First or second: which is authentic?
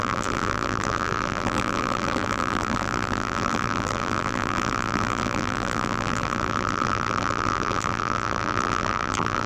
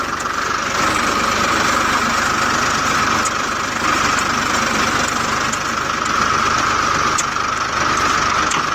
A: second